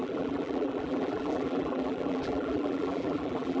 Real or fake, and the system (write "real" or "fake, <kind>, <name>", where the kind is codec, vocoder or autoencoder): fake, vocoder, BigVGAN v2